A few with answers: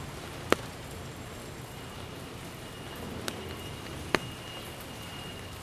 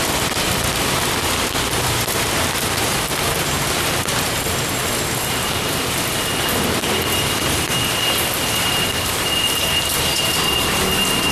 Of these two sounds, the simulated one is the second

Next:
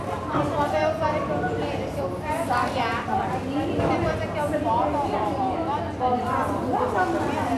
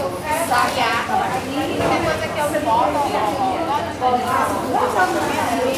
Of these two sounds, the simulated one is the second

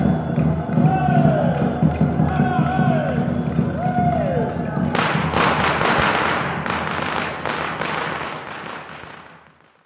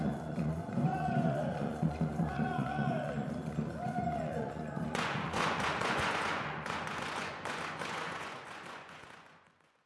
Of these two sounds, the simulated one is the second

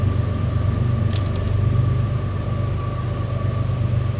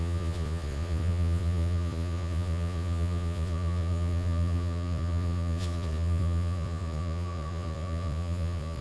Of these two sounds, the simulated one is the second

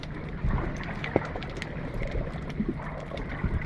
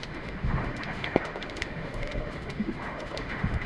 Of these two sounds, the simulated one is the second